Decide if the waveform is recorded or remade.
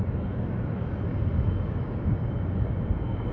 recorded